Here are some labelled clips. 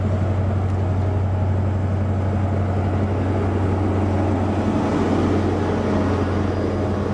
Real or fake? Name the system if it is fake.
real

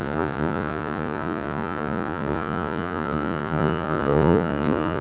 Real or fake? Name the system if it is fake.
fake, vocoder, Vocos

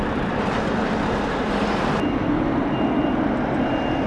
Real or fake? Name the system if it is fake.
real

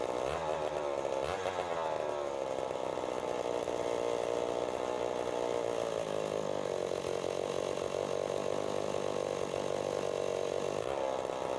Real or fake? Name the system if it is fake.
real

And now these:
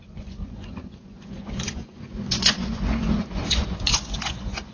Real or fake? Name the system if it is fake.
fake, vocoder, Vocos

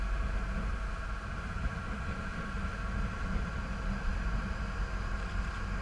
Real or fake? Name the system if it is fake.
real